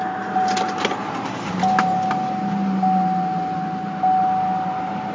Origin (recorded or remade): recorded